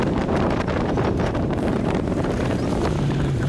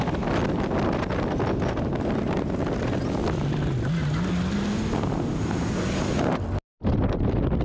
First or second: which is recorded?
second